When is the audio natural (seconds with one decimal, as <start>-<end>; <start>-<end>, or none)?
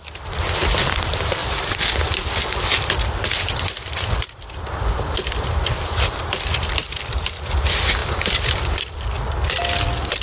6.8-7.5